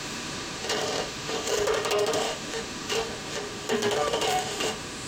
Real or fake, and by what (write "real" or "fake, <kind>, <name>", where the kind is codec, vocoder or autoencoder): fake, autoencoder, DAC-VAE